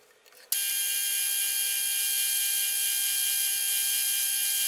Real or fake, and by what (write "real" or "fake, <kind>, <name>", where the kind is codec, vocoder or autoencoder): real